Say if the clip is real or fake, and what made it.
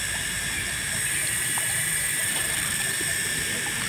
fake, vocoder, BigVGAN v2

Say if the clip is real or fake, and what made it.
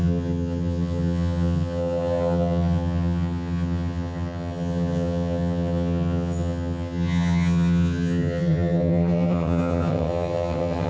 fake, vocoder, HiFi-GAN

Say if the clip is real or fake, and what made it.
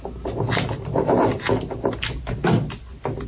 real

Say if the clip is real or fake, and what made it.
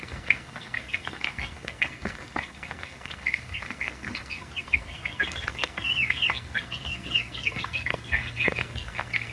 fake, codec, SNAC